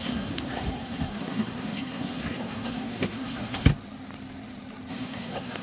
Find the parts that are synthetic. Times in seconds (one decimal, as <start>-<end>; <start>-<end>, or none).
0.0-3.7; 4.9-5.6